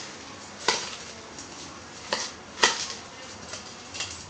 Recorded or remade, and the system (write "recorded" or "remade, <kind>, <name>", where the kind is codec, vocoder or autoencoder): recorded